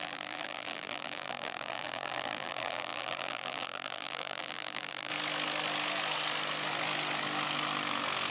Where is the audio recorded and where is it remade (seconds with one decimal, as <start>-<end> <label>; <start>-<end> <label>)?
0.0-5.1 remade; 5.1-8.3 recorded